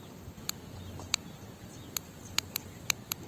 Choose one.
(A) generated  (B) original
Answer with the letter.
B